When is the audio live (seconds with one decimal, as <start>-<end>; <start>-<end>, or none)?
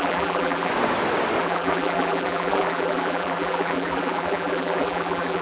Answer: 0.7-1.4